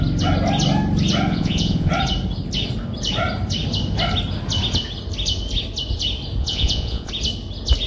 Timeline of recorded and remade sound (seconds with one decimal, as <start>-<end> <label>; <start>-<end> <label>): 0.0-1.3 recorded; 1.3-1.9 remade; 1.9-6.4 recorded; 6.4-7.1 remade; 7.1-7.9 recorded